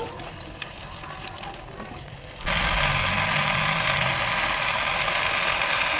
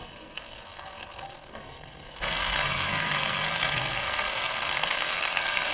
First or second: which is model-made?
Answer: second